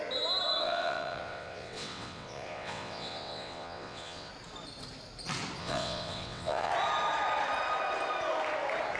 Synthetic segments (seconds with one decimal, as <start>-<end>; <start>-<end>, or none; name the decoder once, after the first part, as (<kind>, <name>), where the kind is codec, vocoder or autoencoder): 0.6-4.3 (vocoder, WaveNeXt); 5.6-6.7